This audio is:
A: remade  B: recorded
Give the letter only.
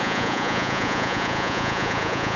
A